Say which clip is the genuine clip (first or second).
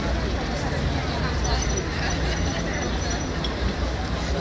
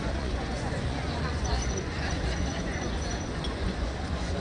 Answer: first